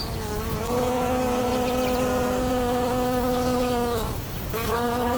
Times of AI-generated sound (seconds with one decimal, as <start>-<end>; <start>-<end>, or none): 0.0-1.5; 2.5-5.2